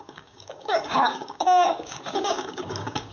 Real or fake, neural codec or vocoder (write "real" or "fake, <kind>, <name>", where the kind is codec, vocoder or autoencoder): fake, codec, DAC